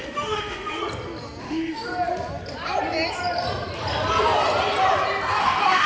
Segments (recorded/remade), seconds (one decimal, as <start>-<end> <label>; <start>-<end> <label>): 0.0-0.8 remade; 0.8-1.4 recorded; 1.4-1.9 remade; 1.9-5.4 recorded; 5.4-5.9 remade

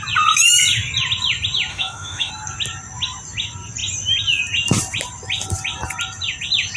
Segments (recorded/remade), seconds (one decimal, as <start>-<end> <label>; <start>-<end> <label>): 0.0-1.7 recorded; 1.7-2.3 remade; 2.3-6.8 recorded

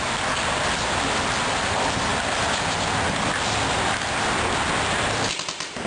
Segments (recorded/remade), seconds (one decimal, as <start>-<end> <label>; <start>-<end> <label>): 0.0-5.9 recorded